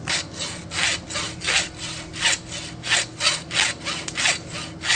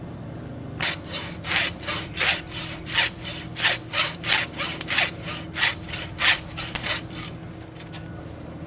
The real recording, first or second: first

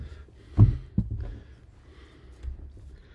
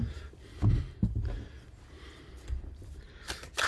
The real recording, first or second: first